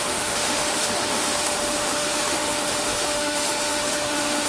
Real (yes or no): no